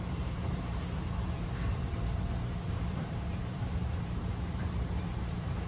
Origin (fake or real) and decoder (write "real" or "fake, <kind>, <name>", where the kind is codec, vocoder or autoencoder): fake, vocoder, BigVGAN v2